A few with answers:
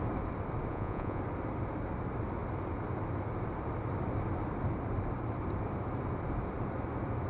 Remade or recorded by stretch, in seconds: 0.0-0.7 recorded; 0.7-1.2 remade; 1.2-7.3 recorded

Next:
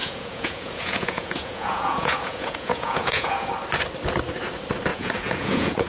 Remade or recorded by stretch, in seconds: 0.0-3.5 remade; 3.5-4.9 recorded; 4.9-5.9 remade

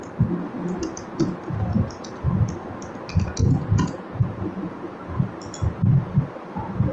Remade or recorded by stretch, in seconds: 0.0-3.4 recorded; 3.4-5.0 remade; 5.0-6.9 recorded

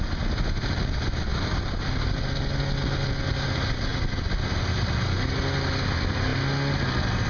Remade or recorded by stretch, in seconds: 0.0-7.3 recorded

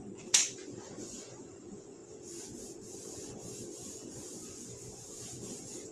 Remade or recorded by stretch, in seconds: 0.0-2.0 remade; 2.0-3.1 recorded; 3.1-5.9 remade

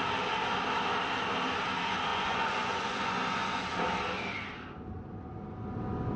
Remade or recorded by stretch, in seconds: 0.0-2.1 recorded; 2.1-3.6 remade; 3.6-6.2 recorded

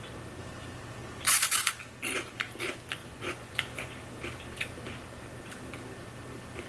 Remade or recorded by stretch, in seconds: 0.0-1.0 recorded; 1.0-1.7 remade; 1.7-3.0 recorded; 3.0-3.9 remade; 3.9-6.7 recorded